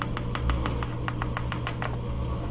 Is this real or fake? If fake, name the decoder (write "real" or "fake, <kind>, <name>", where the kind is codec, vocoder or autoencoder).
real